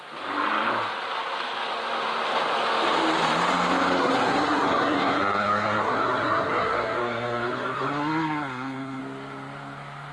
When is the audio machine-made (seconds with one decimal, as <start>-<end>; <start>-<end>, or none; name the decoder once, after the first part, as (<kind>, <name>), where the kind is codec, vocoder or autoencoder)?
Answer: 4.0-9.0 (codec, SNAC)